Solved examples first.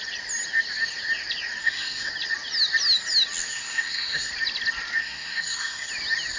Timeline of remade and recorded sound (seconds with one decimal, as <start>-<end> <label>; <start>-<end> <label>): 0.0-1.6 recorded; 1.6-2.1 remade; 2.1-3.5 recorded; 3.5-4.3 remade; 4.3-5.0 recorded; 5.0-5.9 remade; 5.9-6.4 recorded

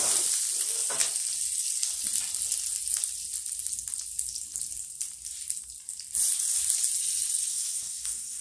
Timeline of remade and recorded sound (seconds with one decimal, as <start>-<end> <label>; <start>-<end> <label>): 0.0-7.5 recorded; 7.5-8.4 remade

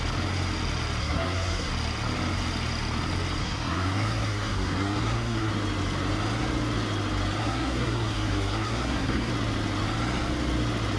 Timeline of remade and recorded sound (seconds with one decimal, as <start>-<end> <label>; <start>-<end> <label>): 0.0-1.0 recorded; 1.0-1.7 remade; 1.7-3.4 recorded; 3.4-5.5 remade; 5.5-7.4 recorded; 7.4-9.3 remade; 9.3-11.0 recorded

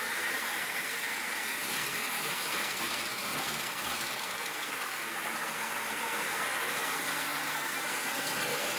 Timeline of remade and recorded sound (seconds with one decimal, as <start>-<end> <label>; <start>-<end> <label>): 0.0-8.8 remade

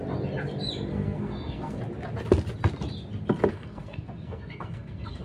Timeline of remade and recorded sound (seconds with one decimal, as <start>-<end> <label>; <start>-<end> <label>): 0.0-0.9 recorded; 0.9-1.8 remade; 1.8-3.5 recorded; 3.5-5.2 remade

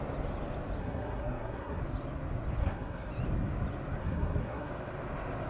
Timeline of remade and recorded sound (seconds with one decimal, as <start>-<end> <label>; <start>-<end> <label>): 0.0-0.8 recorded; 0.8-1.8 remade; 1.8-2.6 recorded; 2.6-3.1 remade; 3.1-4.0 recorded; 4.0-4.7 remade; 4.7-5.5 recorded

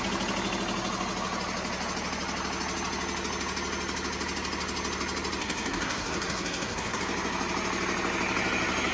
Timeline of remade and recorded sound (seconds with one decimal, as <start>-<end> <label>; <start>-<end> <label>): 0.0-5.4 recorded; 5.4-7.0 remade; 7.0-8.9 recorded